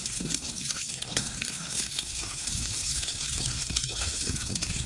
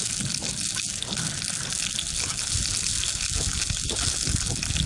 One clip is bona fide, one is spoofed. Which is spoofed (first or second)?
first